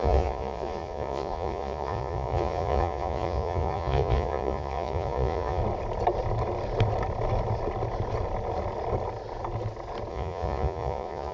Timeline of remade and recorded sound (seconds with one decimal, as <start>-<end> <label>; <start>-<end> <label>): 0.0-5.6 remade; 5.6-10.1 recorded; 10.1-11.3 remade